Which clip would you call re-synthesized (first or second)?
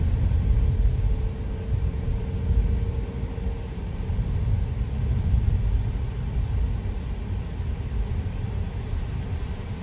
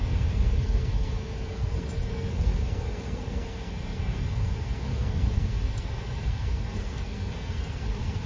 second